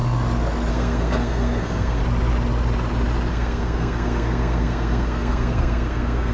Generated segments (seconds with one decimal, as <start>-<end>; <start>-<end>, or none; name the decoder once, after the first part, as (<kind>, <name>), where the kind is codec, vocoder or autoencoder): 0.7-2.0 (codec, SNAC); 3.3-6.3